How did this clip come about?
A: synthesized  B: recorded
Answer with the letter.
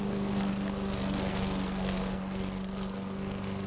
A